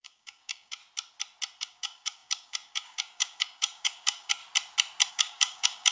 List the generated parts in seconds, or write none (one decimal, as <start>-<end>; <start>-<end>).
0.0-0.8; 1.6-4.4; 5.1-5.9